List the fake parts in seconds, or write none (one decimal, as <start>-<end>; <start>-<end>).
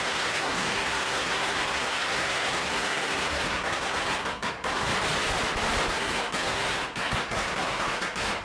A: 0.0-4.9; 5.9-8.4